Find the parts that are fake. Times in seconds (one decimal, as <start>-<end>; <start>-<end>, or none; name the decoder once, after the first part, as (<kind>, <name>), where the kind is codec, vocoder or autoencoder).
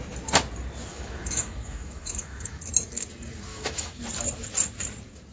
0.9-2.6 (autoencoder, DAC-VAE); 3.5-4.0